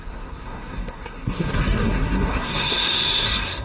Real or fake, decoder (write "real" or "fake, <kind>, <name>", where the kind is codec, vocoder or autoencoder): fake, codec, SNAC